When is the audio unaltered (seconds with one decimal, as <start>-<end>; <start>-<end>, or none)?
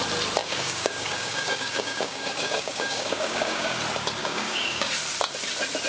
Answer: 0.0-0.4; 3.8-4.2; 4.9-5.9